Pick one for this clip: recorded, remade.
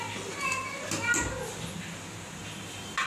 recorded